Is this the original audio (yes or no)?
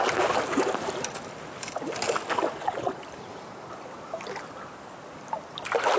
yes